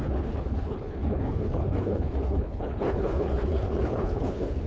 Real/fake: fake